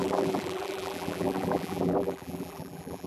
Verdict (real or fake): fake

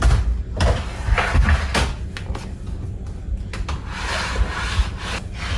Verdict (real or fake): real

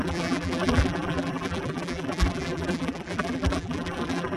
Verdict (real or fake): fake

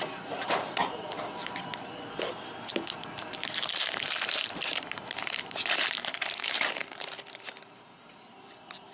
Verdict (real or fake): fake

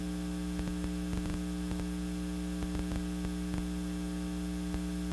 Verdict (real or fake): real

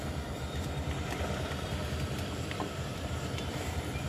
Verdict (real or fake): fake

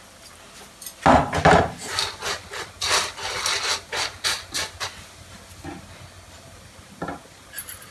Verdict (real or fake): real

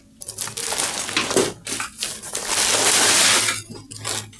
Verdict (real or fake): real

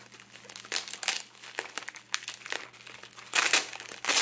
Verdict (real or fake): real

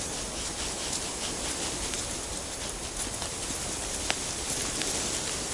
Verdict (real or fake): real